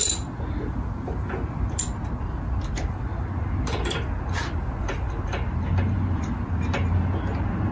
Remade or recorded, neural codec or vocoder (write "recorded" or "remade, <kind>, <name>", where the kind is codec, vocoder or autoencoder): recorded